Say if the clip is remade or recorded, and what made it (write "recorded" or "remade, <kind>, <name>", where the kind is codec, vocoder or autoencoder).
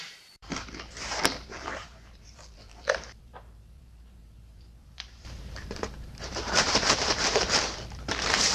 remade, vocoder, BigVGAN v2